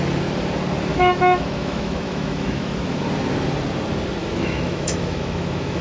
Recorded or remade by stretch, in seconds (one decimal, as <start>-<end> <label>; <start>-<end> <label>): 0.0-0.9 recorded; 0.9-3.0 remade; 3.0-4.2 recorded; 4.2-5.8 remade

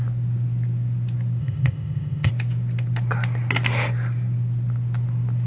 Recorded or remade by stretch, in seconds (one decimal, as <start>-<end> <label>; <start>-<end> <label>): 0.0-1.4 recorded; 1.4-2.3 remade; 2.3-5.5 recorded

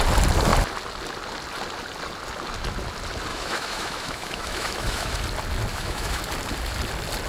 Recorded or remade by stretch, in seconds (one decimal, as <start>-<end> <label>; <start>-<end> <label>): 0.0-3.3 recorded; 3.3-5.2 remade; 5.2-5.7 recorded; 5.7-6.2 remade; 6.2-7.3 recorded

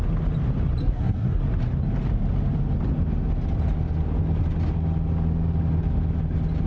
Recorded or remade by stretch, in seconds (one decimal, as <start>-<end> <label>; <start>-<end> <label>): 0.0-0.8 recorded; 0.8-1.4 remade; 1.4-6.7 recorded

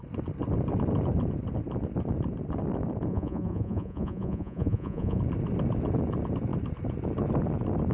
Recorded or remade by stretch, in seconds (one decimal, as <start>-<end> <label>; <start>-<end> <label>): 0.0-3.1 recorded; 3.1-5.2 remade; 5.2-7.9 recorded

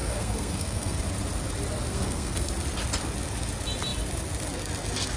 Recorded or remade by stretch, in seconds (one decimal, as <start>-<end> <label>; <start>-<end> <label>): 0.0-1.0 remade; 1.0-1.9 recorded; 1.9-2.5 remade; 2.5-5.2 recorded

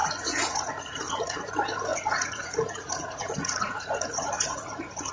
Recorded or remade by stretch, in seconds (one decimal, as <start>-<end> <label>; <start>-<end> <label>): 0.0-1.5 remade; 1.5-1.9 recorded; 1.9-5.1 remade